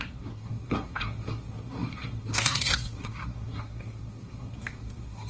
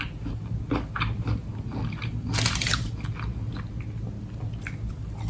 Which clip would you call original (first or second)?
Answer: second